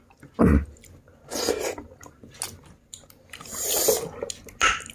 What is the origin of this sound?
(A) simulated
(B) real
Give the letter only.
B